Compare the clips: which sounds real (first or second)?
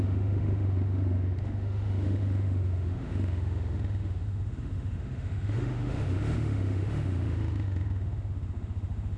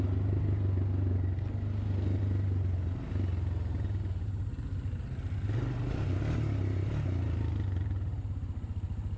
second